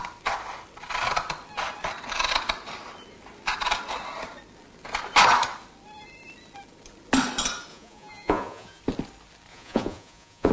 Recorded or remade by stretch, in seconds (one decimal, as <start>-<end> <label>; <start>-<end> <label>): 0.0-7.7 recorded; 7.7-8.8 remade; 8.8-9.5 recorded; 9.5-10.5 remade